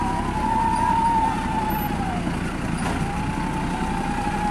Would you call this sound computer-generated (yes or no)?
no